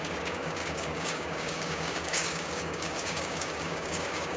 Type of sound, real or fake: fake